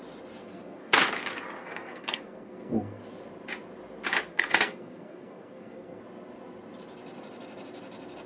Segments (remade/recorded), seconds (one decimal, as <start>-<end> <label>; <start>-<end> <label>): 0.0-0.4 recorded; 0.4-1.0 remade; 1.0-1.6 recorded; 1.6-3.0 remade; 3.0-4.3 recorded; 4.3-6.0 remade; 6.0-8.3 recorded